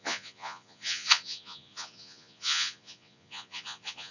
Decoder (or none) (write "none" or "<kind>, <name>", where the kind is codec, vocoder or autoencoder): vocoder, Vocos